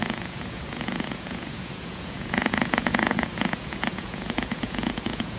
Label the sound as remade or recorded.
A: remade